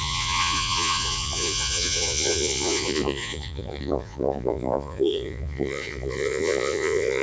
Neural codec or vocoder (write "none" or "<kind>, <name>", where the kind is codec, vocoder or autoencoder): vocoder, Vocos